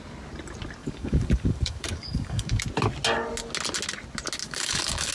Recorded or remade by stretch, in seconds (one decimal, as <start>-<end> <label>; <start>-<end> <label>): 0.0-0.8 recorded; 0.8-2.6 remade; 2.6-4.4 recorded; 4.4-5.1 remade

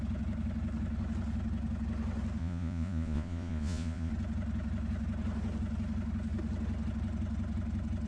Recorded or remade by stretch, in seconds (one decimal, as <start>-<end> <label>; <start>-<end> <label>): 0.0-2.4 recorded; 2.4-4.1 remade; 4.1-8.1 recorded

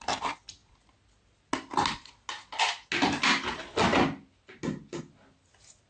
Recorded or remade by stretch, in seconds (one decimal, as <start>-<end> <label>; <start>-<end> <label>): 0.0-5.9 recorded

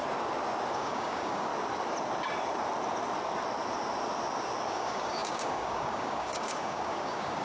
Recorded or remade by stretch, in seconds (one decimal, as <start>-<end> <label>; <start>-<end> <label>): 0.0-0.7 recorded; 0.7-1.5 remade; 1.5-4.7 recorded; 4.7-7.4 remade

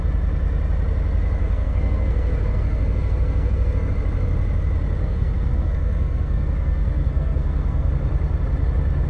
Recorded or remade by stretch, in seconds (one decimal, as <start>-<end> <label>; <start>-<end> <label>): 0.0-1.4 recorded; 1.4-3.9 remade; 3.9-5.0 recorded; 5.0-7.9 remade; 7.9-9.1 recorded

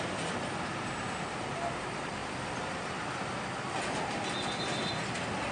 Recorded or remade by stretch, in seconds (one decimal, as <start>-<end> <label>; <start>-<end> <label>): 0.0-5.5 recorded

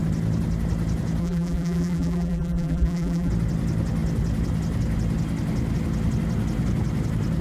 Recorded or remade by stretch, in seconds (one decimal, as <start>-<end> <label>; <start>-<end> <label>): 0.0-1.2 recorded; 1.2-3.3 remade; 3.3-7.4 recorded